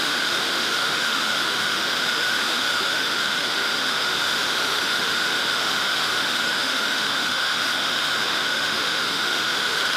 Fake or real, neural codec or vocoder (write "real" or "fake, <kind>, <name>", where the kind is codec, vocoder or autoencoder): fake, autoencoder, DAC-VAE